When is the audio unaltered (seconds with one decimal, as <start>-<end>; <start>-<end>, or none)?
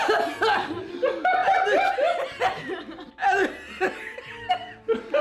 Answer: 0.0-5.2